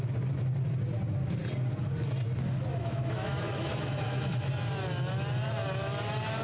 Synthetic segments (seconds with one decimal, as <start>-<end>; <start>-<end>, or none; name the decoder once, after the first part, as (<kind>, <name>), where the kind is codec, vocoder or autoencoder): 2.7-4.5 (autoencoder, DAC-VAE)